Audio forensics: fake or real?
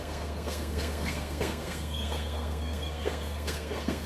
fake